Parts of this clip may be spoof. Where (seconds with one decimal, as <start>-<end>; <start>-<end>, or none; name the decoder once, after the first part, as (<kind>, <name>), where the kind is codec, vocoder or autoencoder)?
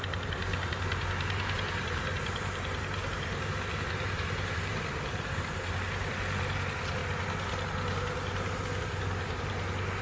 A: 0.5-5.8 (vocoder, BigVGAN v2)